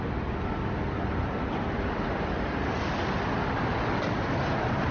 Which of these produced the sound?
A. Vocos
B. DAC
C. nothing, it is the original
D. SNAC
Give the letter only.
C